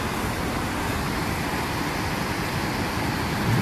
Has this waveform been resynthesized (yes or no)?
no